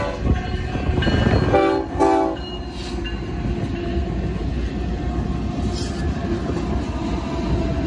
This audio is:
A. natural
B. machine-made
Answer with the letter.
A